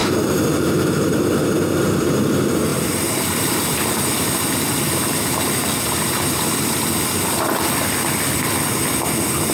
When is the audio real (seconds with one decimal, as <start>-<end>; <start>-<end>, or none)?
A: 1.1-2.7; 4.0-5.2; 6.8-9.5